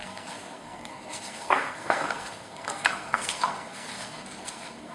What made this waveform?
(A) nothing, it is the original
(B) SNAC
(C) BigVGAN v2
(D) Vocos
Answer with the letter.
B